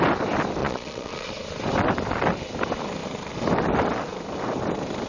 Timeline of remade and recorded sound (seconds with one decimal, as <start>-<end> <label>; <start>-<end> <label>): 0.0-0.6 recorded; 0.6-1.3 remade; 1.3-5.1 recorded